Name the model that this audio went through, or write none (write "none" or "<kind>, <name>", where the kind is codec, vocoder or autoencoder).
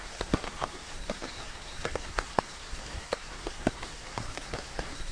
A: codec, SNAC